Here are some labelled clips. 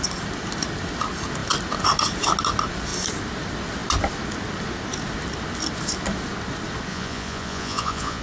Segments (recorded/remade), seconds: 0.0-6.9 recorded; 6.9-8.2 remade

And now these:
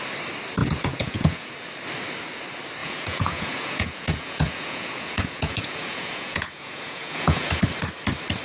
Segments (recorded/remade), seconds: 0.0-0.6 recorded; 0.6-1.5 remade; 1.5-2.8 recorded; 2.8-7.6 remade; 7.6-8.4 recorded

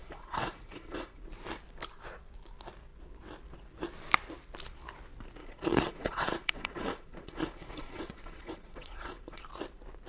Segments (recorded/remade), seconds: 0.0-1.2 remade; 1.2-5.4 recorded; 5.4-9.4 remade; 9.4-10.1 recorded

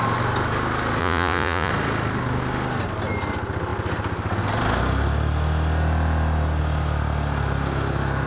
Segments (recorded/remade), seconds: 0.0-1.0 recorded; 1.0-1.7 remade; 1.7-8.3 recorded

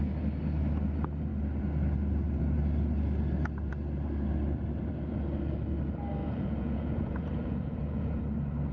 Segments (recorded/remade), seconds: 0.0-6.2 recorded; 6.2-8.2 remade; 8.2-8.7 recorded

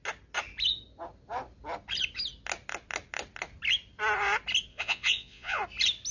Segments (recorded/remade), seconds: 0.0-4.7 recorded; 4.7-5.6 remade; 5.6-6.1 recorded

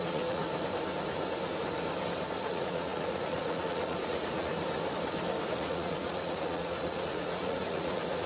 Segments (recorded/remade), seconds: 0.0-0.4 remade; 0.4-2.4 recorded; 2.4-4.5 remade; 4.5-5.5 recorded; 5.5-8.3 remade